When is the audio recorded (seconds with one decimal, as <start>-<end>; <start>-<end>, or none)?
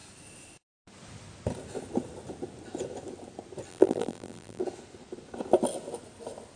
0.0-3.7; 4.6-6.6